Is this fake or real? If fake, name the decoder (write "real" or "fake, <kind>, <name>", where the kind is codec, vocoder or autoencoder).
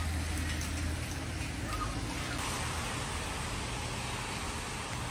real